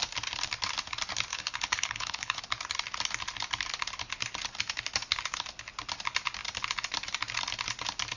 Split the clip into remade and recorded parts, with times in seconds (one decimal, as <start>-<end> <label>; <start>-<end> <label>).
0.0-1.3 recorded; 1.3-2.4 remade; 2.4-8.2 recorded